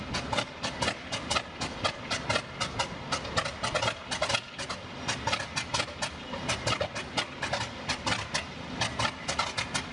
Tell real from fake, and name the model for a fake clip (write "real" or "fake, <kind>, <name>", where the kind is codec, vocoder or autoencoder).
real